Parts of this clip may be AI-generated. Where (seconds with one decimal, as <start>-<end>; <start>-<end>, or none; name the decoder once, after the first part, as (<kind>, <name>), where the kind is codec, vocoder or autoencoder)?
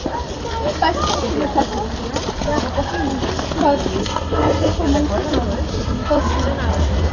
4.0-4.8 (codec, SNAC); 5.7-6.2